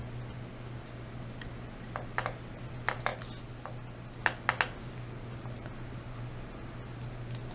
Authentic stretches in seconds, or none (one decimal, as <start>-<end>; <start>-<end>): 0.0-7.5